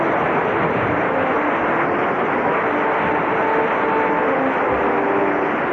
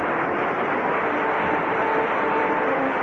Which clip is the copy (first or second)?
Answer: second